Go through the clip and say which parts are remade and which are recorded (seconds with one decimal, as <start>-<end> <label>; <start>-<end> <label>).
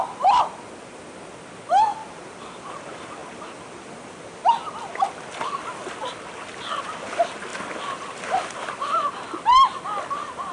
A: 0.0-10.5 recorded